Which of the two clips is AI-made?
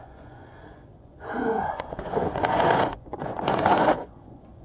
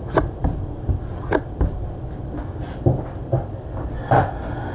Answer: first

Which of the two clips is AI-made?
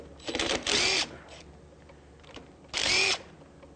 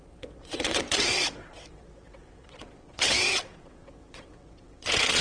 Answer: second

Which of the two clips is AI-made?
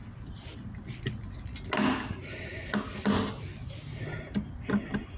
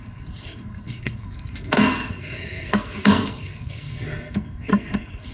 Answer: second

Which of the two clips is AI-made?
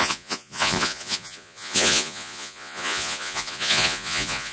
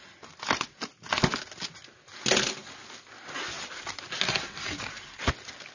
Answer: first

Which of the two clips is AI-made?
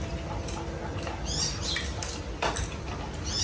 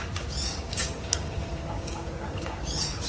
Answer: second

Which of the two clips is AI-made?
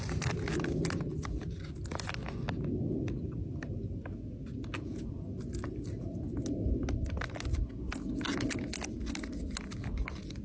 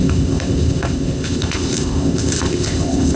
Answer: second